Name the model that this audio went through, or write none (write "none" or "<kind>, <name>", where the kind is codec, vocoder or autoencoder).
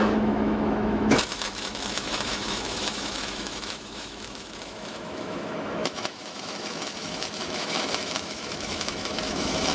autoencoder, DAC-VAE